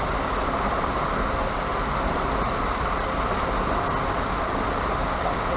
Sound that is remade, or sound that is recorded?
recorded